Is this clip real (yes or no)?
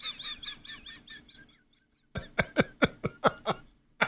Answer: yes